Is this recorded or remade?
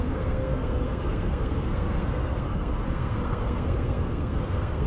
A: remade